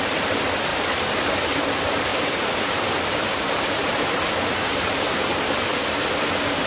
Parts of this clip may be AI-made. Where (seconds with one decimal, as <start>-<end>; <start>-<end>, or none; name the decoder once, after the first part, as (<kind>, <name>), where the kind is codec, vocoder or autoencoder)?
0.7-1.3 (vocoder, BigVGAN v2); 2.1-6.1